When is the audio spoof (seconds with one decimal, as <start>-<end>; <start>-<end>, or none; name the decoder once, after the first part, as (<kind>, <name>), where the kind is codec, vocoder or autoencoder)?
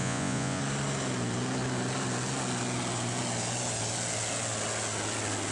0.0-0.6 (vocoder, Vocos)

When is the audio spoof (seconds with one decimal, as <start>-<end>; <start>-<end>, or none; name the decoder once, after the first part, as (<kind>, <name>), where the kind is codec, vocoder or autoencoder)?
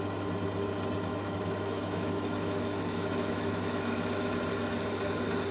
1.1-4.4 (autoencoder, DAC-VAE)